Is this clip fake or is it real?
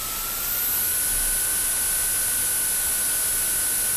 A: real